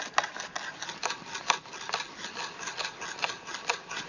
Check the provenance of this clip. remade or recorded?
recorded